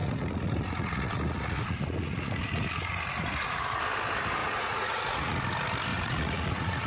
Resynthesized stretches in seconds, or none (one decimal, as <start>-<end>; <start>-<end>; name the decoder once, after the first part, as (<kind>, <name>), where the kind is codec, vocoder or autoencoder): 0.0-3.8 (vocoder, Vocos); 4.4-5.4; 5.9-6.9